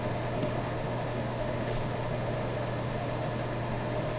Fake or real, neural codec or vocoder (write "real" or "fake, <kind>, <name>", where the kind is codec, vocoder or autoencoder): fake, autoencoder, DAC-VAE